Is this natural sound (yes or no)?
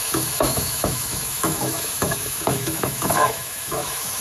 no